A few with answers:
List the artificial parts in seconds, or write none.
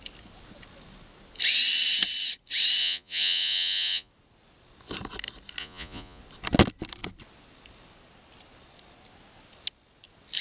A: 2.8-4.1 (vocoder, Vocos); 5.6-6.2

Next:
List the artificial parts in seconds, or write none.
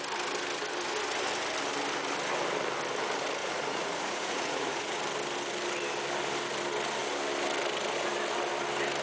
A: 3.4-5.0 (vocoder, Vocos)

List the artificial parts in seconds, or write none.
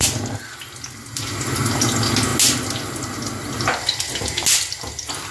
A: none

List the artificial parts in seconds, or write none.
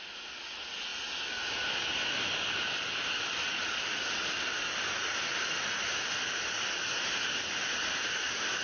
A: none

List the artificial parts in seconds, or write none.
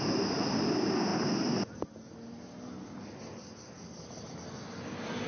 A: none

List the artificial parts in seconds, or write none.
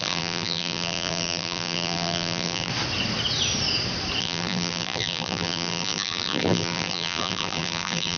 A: 0.0-2.7 (vocoder, BigVGAN v2); 4.2-8.2